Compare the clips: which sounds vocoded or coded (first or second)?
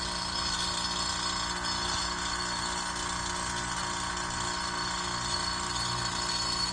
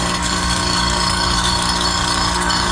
second